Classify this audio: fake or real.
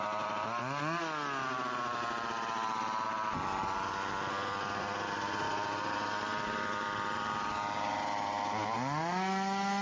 real